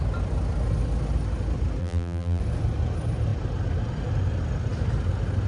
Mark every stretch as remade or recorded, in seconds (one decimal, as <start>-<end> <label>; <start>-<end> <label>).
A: 0.0-1.8 recorded; 1.8-2.4 remade; 2.4-5.5 recorded